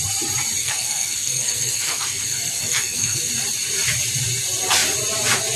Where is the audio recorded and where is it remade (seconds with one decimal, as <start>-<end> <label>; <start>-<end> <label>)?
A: 0.0-0.6 recorded; 0.6-3.3 remade; 3.3-5.6 recorded